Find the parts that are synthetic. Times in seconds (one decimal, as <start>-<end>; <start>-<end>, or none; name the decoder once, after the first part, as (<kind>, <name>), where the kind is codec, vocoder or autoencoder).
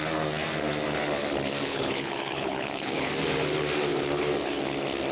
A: 1.7-3.1 (codec, HILCodec)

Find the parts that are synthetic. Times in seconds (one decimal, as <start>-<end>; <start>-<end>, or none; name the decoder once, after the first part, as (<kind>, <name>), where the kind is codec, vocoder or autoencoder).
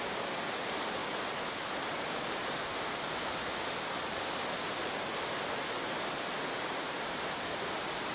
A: 0.0-1.0 (vocoder, BigVGAN v2); 1.7-2.7; 6.7-8.1